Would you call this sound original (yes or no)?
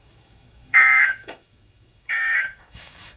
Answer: no